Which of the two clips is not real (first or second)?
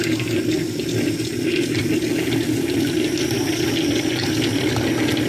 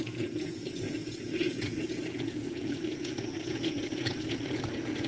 second